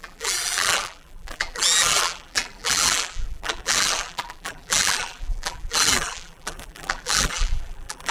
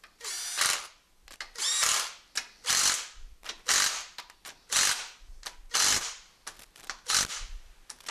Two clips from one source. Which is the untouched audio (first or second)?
second